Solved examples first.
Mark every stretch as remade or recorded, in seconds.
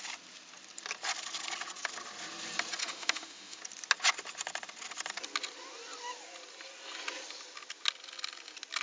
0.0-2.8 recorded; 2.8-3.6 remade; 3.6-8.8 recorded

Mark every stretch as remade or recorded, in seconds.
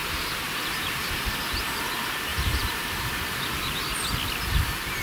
0.0-1.0 remade; 1.0-2.3 recorded; 2.3-3.6 remade; 3.6-5.0 recorded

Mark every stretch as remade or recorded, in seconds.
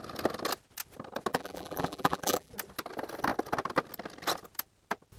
0.0-1.3 recorded; 1.3-2.5 remade; 2.5-5.2 recorded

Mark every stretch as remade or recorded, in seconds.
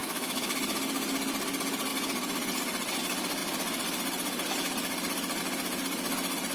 0.0-0.6 remade; 0.6-6.5 recorded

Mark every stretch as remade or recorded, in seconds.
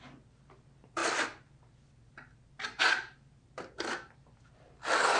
0.0-5.2 recorded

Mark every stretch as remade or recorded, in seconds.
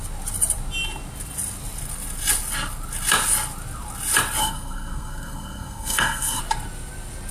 0.0-4.4 recorded; 4.4-6.4 remade; 6.4-7.3 recorded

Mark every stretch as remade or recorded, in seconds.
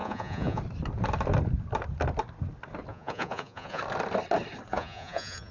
0.0-0.6 remade; 0.6-2.9 recorded; 2.9-3.8 remade; 3.8-4.7 recorded; 4.7-5.5 remade